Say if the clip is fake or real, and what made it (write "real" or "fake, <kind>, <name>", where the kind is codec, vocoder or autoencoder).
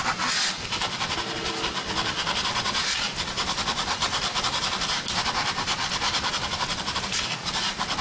real